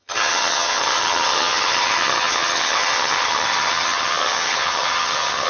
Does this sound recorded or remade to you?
remade